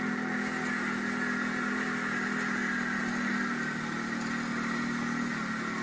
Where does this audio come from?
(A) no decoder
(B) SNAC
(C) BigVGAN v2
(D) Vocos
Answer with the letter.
A